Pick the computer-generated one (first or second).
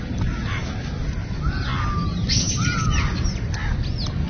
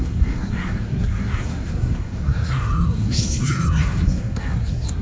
second